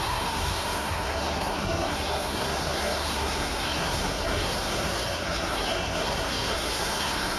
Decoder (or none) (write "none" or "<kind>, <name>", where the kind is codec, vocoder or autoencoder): codec, SNAC